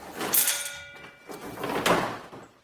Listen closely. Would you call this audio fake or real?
real